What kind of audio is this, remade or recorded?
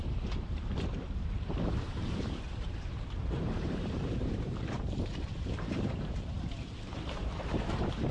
remade